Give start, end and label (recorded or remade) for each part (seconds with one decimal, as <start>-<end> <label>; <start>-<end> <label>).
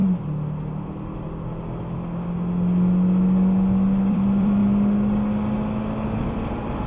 0.0-4.1 recorded; 4.1-4.6 remade; 4.6-6.2 recorded; 6.2-6.9 remade